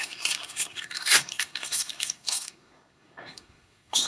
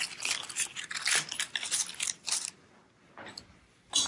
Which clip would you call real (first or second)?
second